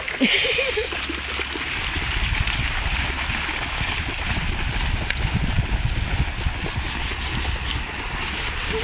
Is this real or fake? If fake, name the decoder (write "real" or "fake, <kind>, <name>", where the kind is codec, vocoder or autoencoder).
real